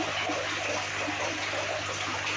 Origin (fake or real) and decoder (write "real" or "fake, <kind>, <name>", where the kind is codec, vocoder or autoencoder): real